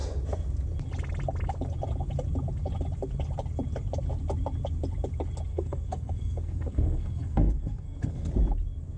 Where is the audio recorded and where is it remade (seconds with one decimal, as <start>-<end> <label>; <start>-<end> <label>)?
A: 0.0-5.5 recorded; 5.5-8.3 remade; 8.3-9.0 recorded